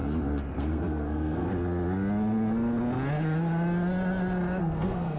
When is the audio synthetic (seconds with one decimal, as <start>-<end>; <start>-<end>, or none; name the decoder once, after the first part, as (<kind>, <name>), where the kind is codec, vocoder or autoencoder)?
0.6-1.5 (codec, SNAC); 4.6-5.2